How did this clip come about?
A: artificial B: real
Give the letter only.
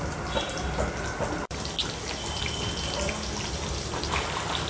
B